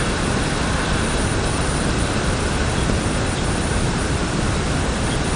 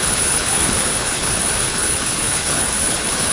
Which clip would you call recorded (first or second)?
first